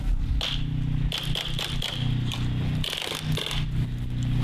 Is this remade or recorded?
recorded